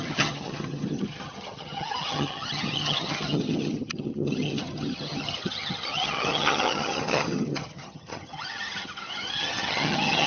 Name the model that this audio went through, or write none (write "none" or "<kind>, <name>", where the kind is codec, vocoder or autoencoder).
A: vocoder, HiFi-GAN